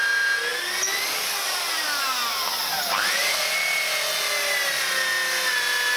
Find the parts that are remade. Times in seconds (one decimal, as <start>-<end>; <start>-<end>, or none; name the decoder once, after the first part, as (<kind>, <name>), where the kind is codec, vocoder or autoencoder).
none